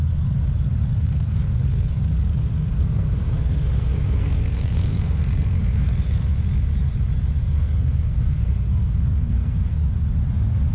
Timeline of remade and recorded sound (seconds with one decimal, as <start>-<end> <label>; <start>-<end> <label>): 0.0-1.0 recorded; 1.0-2.0 remade; 2.0-2.5 recorded; 2.5-6.3 remade; 6.3-7.4 recorded; 7.4-9.9 remade; 9.9-10.7 recorded